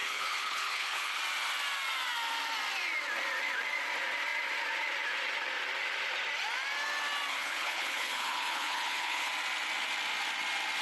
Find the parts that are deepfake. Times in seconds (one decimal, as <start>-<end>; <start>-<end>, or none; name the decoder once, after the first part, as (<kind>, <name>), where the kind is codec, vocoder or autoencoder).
0.0-1.2 (codec, HILCodec); 7.3-9.3